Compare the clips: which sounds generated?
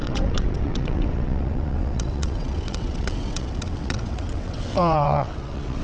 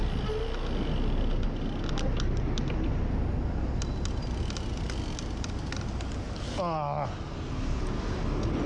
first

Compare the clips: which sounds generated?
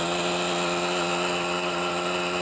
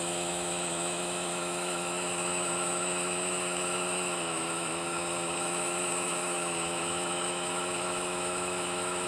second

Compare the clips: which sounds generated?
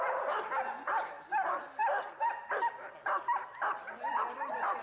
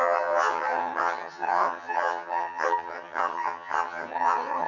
second